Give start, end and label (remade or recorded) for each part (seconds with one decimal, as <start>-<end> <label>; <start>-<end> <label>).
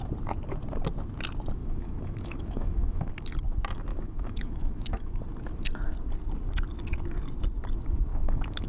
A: 0.0-1.6 recorded; 1.6-3.1 remade; 3.1-3.9 recorded; 3.9-5.2 remade; 5.2-8.1 recorded; 8.1-8.7 remade